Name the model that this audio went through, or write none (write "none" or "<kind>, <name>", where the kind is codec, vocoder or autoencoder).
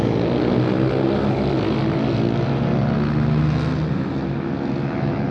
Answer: none